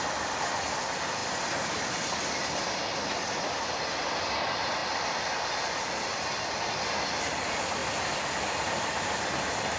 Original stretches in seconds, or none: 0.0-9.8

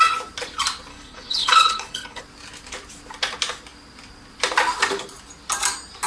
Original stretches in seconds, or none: 0.0-0.9; 2.2-6.1

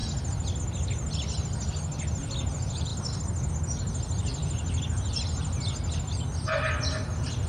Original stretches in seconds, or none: 0.0-7.5

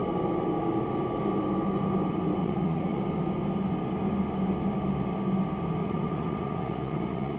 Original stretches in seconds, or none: 0.0-2.4; 3.0-5.8

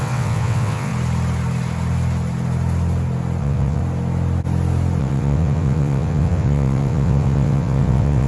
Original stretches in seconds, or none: 0.9-3.4; 3.8-5.0